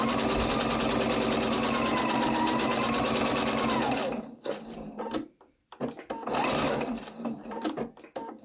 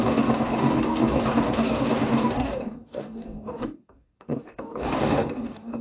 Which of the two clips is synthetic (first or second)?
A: second